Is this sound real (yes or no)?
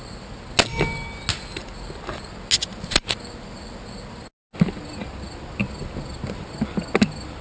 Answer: yes